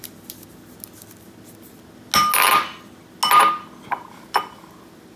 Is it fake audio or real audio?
real